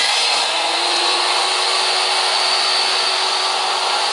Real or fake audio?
fake